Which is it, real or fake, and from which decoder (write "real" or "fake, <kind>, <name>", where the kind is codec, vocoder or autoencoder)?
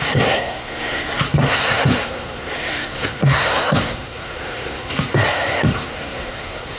fake, codec, SNAC